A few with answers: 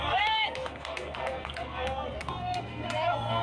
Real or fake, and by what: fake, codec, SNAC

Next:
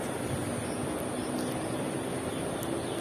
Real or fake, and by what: real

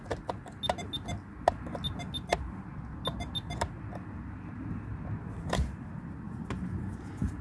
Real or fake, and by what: real